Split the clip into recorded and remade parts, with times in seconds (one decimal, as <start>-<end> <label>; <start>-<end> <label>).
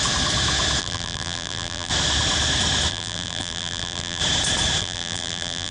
0.0-0.8 recorded; 0.8-1.9 remade; 1.9-2.9 recorded; 2.9-4.2 remade; 4.2-4.8 recorded; 4.8-5.7 remade